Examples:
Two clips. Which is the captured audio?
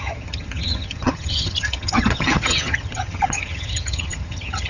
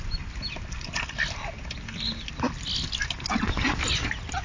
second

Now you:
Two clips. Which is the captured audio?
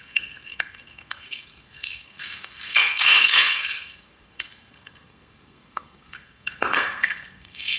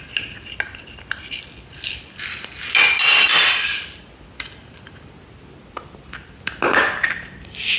second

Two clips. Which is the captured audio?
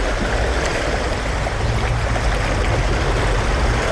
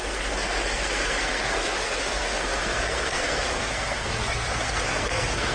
first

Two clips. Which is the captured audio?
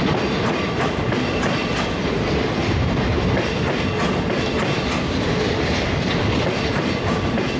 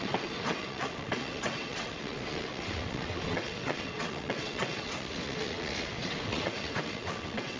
first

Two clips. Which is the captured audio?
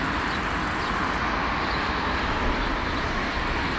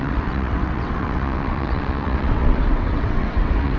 first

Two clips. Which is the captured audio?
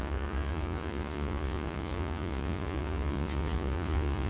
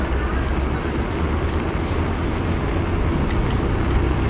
second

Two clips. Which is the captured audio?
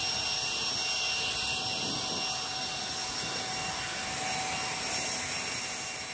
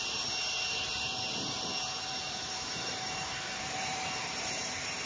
first